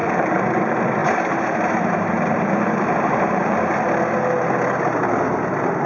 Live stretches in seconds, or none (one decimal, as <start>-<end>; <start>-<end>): 0.6-1.0; 3.8-5.9